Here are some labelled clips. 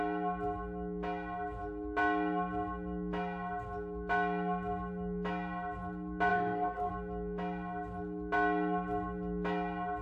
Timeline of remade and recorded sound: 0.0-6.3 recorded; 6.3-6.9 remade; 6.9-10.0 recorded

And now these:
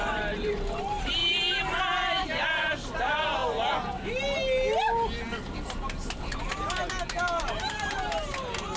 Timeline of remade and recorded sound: 0.0-1.2 remade; 1.2-1.8 recorded; 1.8-3.4 remade; 3.4-7.2 recorded; 7.2-8.8 remade

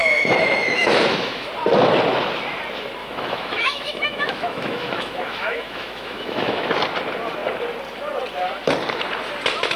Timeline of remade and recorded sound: 0.0-1.5 remade; 1.5-3.0 recorded; 3.0-6.7 remade; 6.7-9.8 recorded